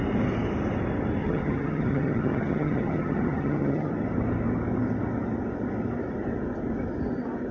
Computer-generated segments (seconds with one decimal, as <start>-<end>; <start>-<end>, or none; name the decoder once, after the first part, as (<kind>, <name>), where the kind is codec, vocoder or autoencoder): 1.2-3.9 (vocoder, HiFi-GAN)